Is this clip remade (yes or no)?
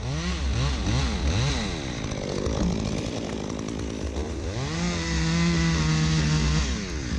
no